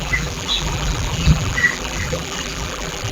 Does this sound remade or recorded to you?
remade